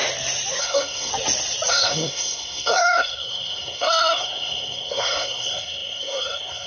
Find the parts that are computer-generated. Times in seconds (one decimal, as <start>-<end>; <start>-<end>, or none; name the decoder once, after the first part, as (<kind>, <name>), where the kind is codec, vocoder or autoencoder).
0.6-1.1 (codec, SNAC); 1.7-6.7

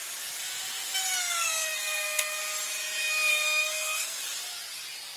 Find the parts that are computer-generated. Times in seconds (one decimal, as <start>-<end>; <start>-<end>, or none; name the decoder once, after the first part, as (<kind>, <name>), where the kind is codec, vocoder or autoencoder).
1.2-2.4 (codec, SNAC); 3.3-4.2

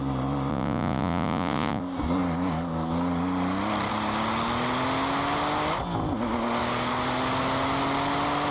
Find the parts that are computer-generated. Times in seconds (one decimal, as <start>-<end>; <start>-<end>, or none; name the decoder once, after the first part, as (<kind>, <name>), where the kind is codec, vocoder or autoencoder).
0.5-1.8 (vocoder, Vocos)